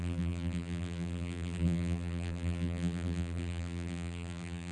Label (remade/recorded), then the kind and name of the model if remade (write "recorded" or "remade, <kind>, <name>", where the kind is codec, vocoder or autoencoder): remade, vocoder, BigVGAN v2